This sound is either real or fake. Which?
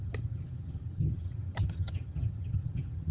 fake